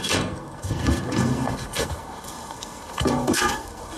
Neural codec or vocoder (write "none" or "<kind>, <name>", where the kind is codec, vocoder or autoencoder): codec, SNAC